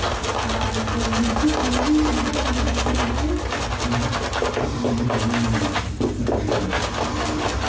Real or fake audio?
real